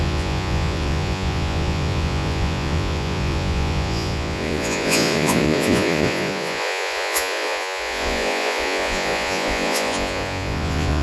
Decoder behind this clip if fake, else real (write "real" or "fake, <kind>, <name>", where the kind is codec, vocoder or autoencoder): fake, vocoder, Vocos